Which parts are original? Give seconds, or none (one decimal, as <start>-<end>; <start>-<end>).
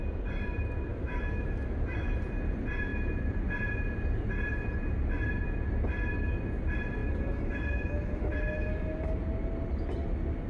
0.0-0.9; 2.1-7.0; 8.8-10.5